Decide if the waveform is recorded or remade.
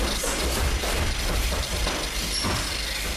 remade